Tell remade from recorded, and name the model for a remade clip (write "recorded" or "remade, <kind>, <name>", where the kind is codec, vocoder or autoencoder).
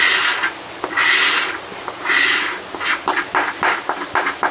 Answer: recorded